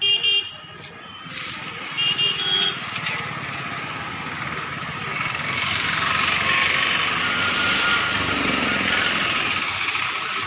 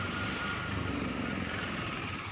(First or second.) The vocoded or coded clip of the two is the second